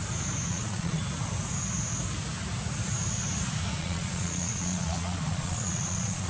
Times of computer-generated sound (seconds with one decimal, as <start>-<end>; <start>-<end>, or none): 0.5-1.0; 3.8-6.3